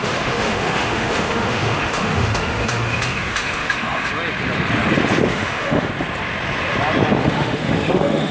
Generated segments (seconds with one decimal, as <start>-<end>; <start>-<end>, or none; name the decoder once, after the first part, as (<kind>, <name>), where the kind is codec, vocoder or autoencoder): 0.0-4.1 (autoencoder, DAC-VAE); 5.3-5.9; 7.2-8.3